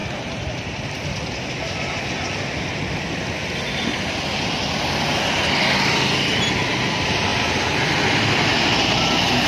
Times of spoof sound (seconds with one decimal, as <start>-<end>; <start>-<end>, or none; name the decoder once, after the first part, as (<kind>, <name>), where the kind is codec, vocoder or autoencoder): 0.0-2.0 (vocoder, BigVGAN v2)